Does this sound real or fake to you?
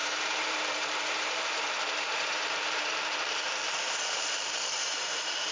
fake